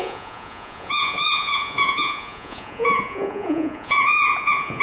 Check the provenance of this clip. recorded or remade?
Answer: remade